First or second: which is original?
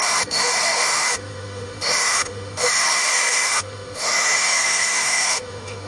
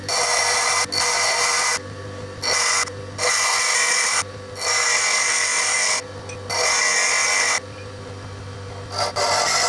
second